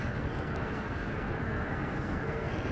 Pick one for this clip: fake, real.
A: fake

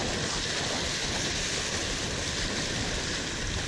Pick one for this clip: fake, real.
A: real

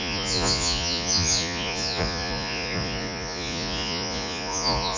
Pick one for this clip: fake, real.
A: fake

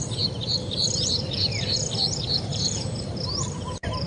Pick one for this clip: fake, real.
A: fake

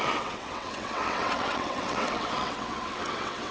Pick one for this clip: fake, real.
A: fake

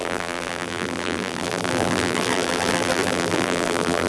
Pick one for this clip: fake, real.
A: fake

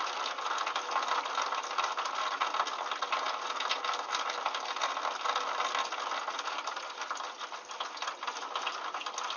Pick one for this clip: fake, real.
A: real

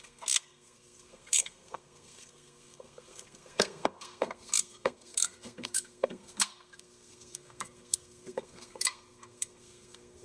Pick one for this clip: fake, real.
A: fake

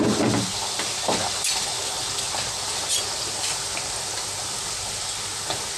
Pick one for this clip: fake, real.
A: real